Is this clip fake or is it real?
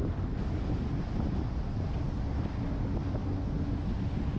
real